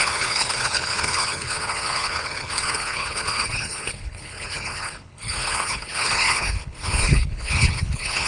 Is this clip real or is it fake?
fake